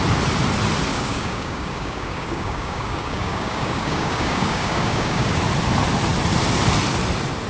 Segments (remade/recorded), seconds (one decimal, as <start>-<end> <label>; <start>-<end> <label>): 0.0-0.9 recorded; 0.9-5.4 remade; 5.4-7.5 recorded